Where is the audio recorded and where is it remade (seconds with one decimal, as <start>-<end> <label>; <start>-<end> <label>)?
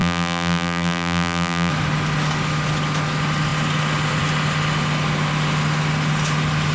0.0-1.7 remade; 1.7-6.7 recorded